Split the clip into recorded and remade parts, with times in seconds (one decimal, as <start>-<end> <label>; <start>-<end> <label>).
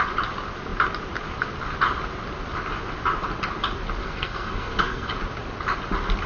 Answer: 0.0-4.0 recorded; 4.0-5.1 remade; 5.1-6.3 recorded